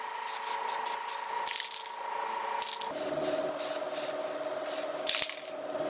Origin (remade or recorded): recorded